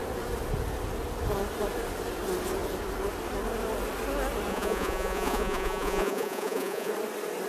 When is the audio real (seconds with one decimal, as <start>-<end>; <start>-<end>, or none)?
0.0-4.5; 6.9-7.5